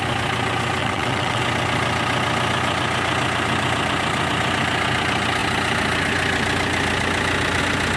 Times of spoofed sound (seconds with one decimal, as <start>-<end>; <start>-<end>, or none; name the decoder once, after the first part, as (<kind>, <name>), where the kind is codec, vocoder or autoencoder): 0.8-1.4 (vocoder, WaveNeXt)